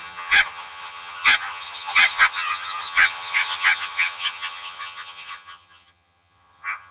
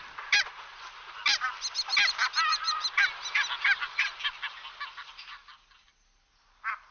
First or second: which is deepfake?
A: first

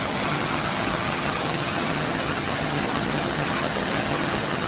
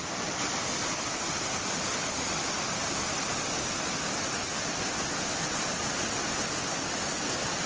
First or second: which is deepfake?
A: first